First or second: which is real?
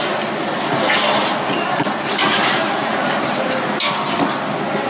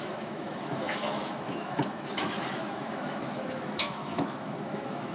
first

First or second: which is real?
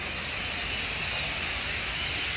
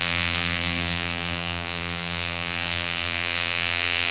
first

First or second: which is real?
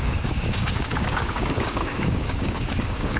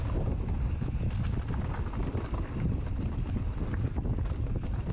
second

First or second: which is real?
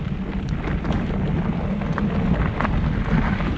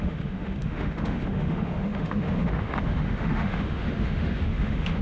first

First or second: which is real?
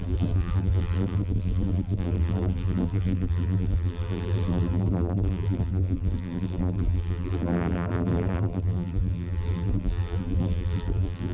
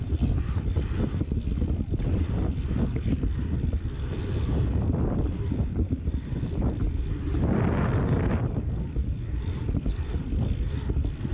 second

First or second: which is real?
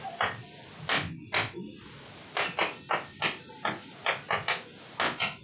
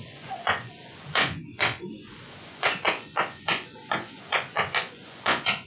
first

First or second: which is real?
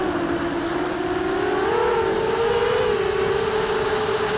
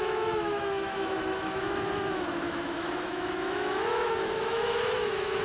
first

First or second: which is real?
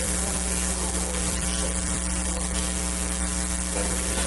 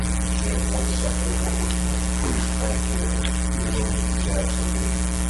second